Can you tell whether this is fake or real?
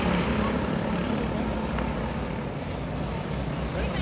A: real